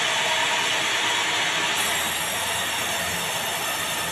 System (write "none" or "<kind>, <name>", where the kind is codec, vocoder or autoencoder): none